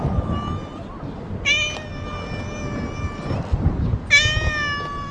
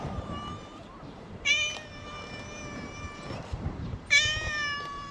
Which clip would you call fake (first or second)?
second